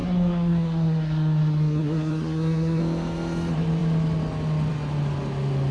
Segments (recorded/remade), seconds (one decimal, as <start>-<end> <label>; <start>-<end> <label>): 0.0-2.8 remade; 2.8-5.7 recorded